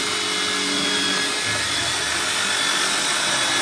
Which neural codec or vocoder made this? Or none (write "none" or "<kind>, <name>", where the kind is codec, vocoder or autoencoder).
none